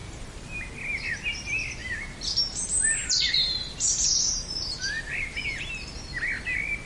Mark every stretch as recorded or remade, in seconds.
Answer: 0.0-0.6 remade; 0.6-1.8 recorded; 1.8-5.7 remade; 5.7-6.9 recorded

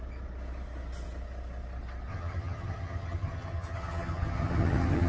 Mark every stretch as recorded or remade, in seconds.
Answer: 0.0-2.1 recorded; 2.1-5.1 remade

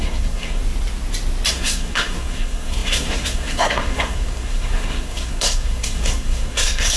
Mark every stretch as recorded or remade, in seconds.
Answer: 0.0-0.6 remade; 0.6-1.5 recorded; 1.5-7.0 remade

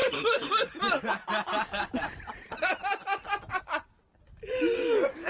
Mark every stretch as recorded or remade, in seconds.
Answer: 0.0-0.5 remade; 0.5-5.3 recorded

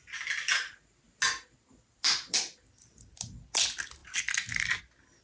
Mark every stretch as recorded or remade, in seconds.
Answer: 0.0-5.2 recorded

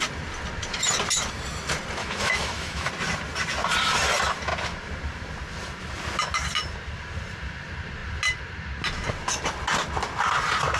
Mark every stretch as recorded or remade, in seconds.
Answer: 0.0-2.0 recorded; 2.0-2.9 remade; 2.9-10.8 recorded